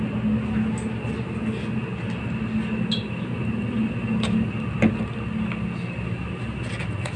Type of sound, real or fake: real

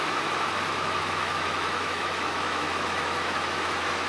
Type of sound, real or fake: fake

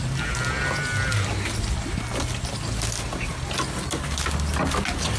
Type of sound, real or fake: real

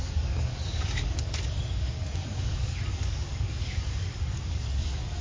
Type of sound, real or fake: fake